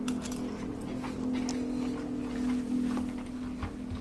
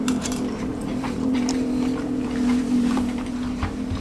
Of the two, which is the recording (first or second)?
first